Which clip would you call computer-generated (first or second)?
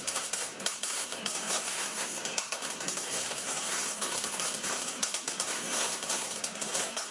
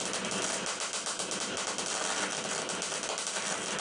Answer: first